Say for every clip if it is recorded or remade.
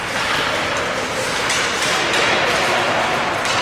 recorded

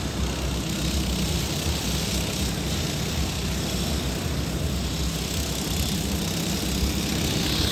recorded